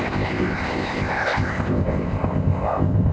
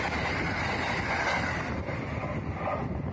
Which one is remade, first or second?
first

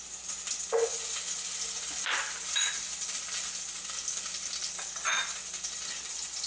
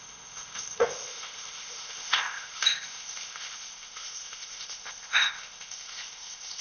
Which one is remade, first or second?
second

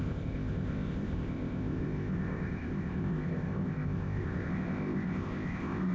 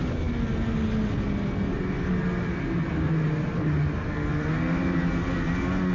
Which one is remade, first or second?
first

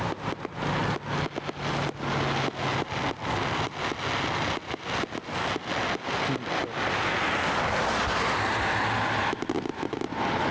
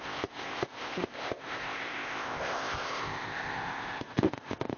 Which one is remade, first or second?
second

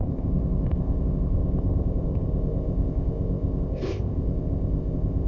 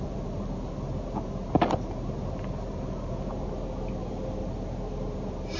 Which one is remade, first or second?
first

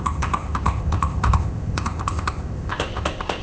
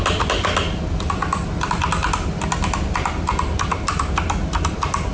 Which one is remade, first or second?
first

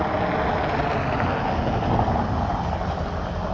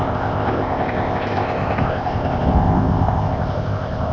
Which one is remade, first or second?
second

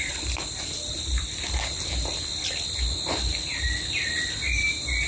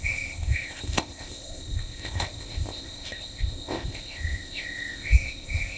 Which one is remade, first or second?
second